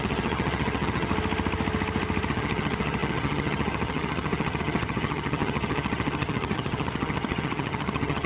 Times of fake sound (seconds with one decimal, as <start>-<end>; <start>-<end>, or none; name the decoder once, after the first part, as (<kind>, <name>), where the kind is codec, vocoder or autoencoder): 0.0-1.1 (vocoder, HiFi-GAN); 2.3-8.3